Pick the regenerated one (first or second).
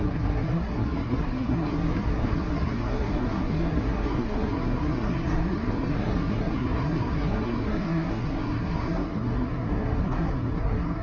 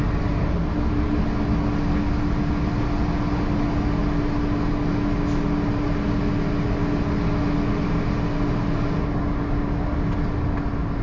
first